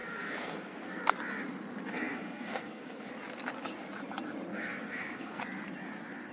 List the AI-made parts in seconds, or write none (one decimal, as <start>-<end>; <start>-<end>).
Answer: 0.0-1.0; 1.9-3.1; 4.5-5.4